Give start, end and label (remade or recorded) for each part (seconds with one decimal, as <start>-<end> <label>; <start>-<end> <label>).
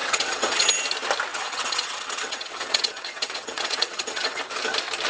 0.0-0.7 remade; 0.7-1.3 recorded; 1.3-4.4 remade; 4.4-5.1 recorded